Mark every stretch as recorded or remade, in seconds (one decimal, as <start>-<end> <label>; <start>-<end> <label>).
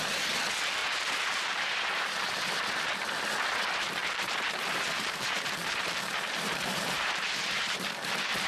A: 0.0-0.8 recorded; 0.8-2.1 remade; 2.1-4.0 recorded; 4.0-7.9 remade; 7.9-8.5 recorded